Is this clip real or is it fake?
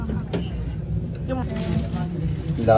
real